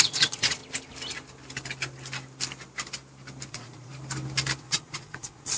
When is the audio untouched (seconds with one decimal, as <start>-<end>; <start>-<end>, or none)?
0.6-3.5; 3.9-4.6